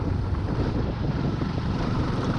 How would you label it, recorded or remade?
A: remade